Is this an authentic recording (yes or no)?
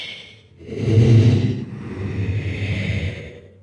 yes